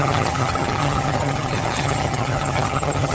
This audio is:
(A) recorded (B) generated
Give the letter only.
B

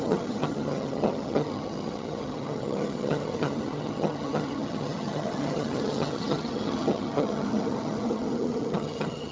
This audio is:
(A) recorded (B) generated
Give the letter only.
B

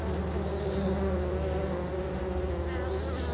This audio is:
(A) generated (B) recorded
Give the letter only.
B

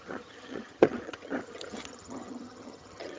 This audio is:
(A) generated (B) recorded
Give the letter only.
A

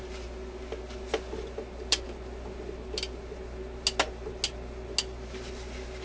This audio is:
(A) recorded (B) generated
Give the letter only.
A